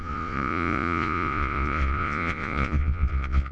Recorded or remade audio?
remade